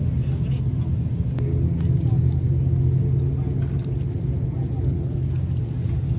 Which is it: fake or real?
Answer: real